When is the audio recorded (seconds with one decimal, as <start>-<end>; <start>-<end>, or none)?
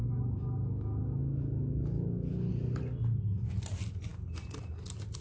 2.5-5.2